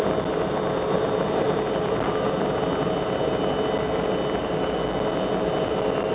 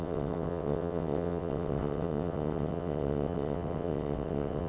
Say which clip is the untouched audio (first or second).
first